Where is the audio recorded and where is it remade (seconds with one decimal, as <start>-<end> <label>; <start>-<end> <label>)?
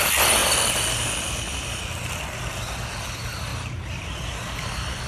0.0-5.1 recorded